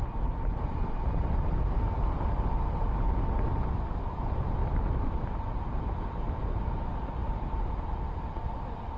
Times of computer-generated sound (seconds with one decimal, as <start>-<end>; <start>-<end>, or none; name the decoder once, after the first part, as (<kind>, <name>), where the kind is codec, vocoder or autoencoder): none